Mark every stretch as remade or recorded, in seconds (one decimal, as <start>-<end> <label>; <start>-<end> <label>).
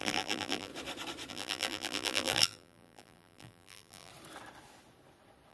0.0-0.7 remade; 0.7-1.3 recorded; 1.3-4.1 remade; 4.1-5.5 recorded